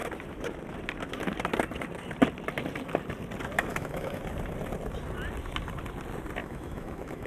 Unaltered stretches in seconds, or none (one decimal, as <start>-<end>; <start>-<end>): 0.0-3.7; 4.2-6.4

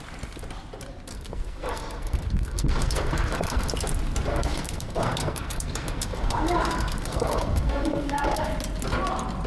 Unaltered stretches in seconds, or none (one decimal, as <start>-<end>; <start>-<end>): 0.0-1.1; 3.7-4.3; 8.5-9.5

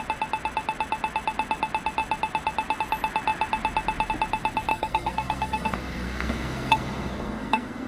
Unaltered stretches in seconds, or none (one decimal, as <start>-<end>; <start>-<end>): 0.0-4.7

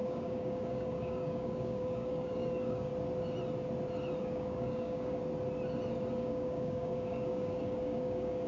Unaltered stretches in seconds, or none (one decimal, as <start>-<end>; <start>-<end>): 2.9-4.2; 5.2-6.1